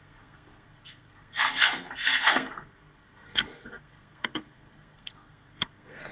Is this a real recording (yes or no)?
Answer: no